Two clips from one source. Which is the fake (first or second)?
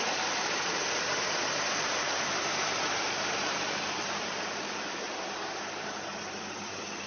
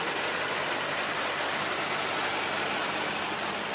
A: first